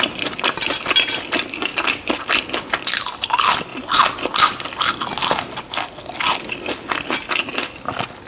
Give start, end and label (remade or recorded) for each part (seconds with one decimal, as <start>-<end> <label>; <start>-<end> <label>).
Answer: 0.0-8.3 recorded